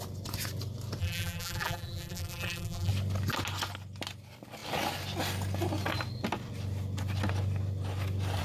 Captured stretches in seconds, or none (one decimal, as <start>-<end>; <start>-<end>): 0.0-1.0; 2.9-8.4